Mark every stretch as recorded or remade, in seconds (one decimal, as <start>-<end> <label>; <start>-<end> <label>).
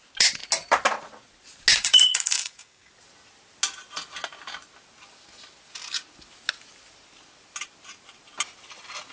0.0-1.7 recorded; 1.7-2.9 remade; 2.9-9.1 recorded